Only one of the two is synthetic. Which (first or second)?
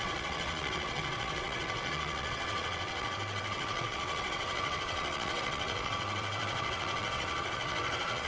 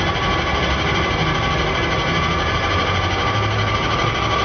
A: first